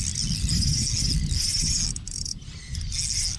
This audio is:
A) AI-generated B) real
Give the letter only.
B